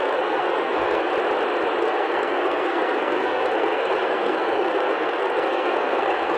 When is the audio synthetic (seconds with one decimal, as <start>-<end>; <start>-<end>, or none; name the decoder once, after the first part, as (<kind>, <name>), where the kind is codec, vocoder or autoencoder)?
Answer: 0.0-1.1 (codec, SNAC); 1.8-6.4